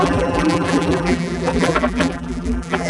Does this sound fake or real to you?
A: fake